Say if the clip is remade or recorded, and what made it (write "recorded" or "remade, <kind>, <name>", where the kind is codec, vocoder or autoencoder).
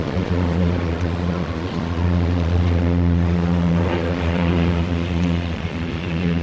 remade, vocoder, Vocos